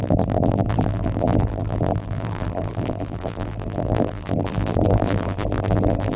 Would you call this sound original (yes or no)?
no